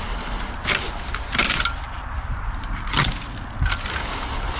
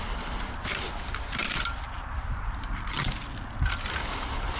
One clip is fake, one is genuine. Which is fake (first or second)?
second